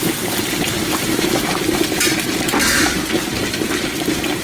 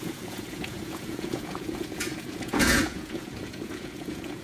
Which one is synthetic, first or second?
second